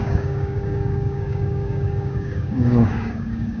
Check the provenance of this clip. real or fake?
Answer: fake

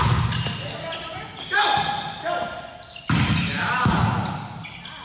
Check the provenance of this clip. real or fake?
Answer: real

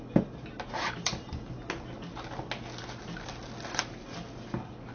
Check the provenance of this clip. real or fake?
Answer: real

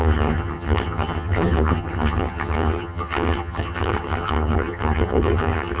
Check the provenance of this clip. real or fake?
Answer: fake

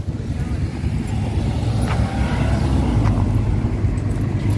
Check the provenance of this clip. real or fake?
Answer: real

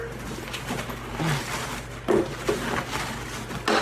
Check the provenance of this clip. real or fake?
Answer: real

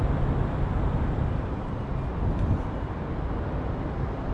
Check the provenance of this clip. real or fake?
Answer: real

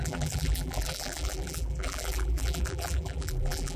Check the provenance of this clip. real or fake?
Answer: fake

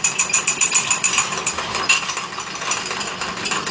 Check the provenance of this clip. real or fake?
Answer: real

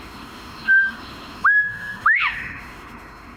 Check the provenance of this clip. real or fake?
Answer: fake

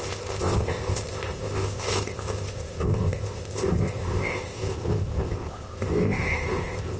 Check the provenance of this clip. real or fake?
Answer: fake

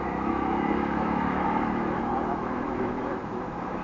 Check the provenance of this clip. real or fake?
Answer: fake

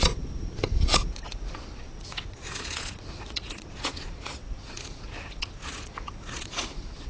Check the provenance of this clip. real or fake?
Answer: fake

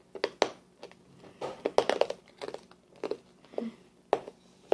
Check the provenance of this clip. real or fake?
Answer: real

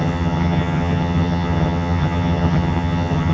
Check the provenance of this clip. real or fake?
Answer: fake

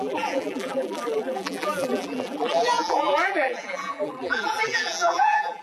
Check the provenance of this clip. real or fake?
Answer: fake